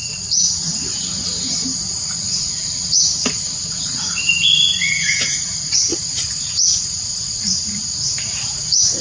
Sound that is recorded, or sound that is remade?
remade